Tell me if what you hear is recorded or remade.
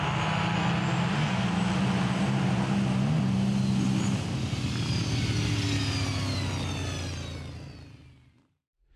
recorded